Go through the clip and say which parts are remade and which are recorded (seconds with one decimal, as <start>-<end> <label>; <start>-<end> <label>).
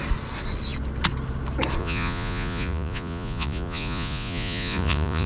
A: 0.0-1.8 recorded; 1.8-5.3 remade